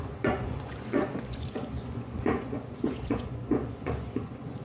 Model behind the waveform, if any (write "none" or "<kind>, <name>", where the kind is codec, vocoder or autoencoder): vocoder, Vocos